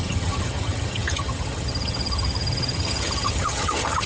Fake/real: fake